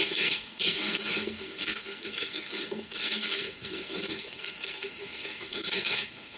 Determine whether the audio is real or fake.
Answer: fake